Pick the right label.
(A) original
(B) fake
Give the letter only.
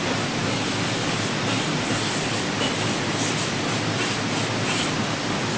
A